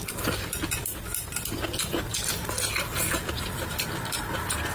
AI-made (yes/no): no